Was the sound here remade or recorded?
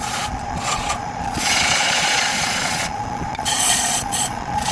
remade